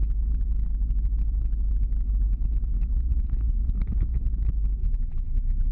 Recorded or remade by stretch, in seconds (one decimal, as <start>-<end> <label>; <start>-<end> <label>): 0.0-4.8 recorded; 4.8-5.7 remade